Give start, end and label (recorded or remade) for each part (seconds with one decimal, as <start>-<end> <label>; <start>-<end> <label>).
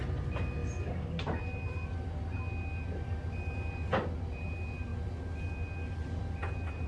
0.0-6.9 recorded